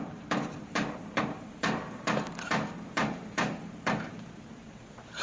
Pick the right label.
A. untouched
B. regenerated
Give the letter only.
B